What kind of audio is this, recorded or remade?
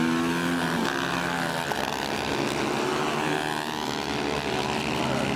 recorded